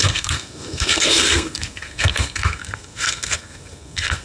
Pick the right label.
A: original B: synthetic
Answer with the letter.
B